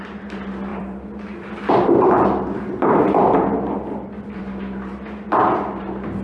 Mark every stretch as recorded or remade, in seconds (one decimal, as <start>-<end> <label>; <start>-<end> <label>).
0.0-0.7 recorded; 0.7-4.4 remade; 4.4-6.2 recorded